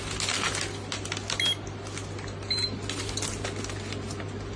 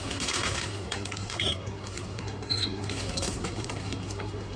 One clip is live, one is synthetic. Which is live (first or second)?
first